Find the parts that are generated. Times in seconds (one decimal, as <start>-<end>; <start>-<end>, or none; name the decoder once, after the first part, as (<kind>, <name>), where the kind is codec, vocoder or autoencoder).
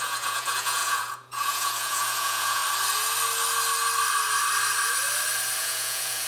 0.0-2.6 (vocoder, Vocos); 5.6-6.3